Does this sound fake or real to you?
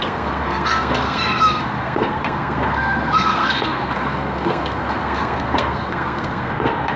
fake